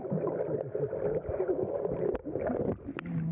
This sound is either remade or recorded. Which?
recorded